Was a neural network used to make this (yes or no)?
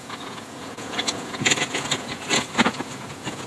yes